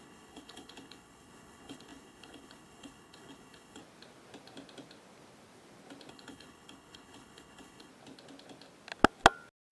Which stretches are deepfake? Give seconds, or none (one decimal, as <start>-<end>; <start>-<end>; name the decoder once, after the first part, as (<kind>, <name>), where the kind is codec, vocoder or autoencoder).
0.0-3.8 (codec, HILCodec); 6.1-7.9